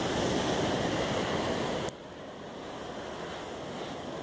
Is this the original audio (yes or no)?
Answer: yes